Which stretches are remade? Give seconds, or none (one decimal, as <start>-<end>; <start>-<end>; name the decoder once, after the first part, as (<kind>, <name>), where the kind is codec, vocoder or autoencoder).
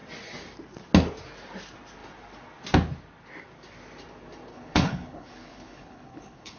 4.5-6.6 (codec, HILCodec)